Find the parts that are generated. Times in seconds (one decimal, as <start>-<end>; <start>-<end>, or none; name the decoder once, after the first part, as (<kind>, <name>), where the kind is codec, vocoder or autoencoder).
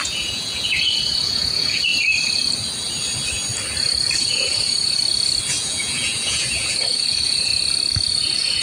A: 0.0-1.9 (vocoder, Vocos); 4.2-5.0; 5.6-7.5; 8.1-8.6